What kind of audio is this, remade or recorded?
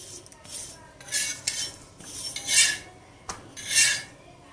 recorded